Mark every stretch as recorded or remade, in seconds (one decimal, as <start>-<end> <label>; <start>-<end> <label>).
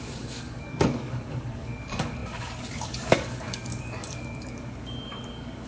0.0-5.7 remade